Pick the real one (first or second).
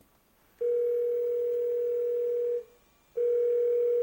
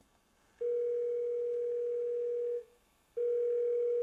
first